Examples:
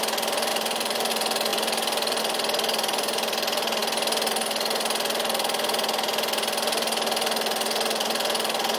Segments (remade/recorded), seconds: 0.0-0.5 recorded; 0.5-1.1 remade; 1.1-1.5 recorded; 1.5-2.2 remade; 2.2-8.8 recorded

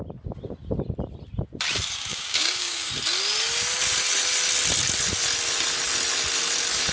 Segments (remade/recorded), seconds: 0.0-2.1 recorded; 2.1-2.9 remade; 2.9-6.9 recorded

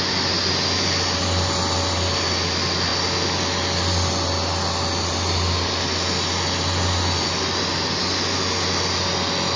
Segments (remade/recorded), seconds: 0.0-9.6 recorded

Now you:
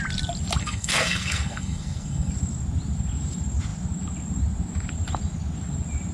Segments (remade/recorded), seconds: 0.0-0.6 recorded; 0.6-2.3 remade; 2.3-6.1 recorded